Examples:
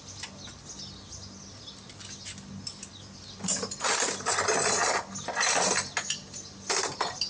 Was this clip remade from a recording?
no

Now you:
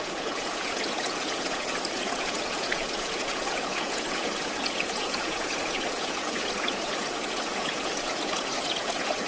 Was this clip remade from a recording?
yes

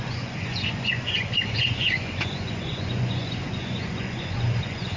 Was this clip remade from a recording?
yes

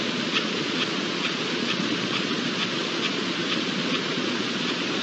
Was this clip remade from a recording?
yes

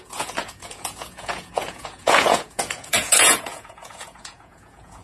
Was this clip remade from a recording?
yes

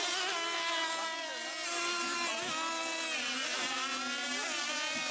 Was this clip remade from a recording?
no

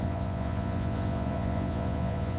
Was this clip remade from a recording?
yes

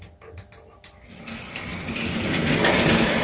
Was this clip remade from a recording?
no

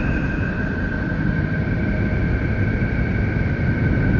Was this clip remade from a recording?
no